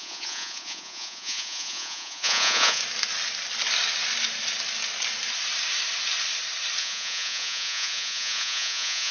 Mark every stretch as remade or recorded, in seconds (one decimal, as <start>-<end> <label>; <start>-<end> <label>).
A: 0.0-2.8 remade; 2.8-6.8 recorded; 6.8-9.1 remade